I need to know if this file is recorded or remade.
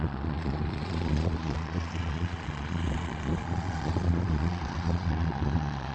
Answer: remade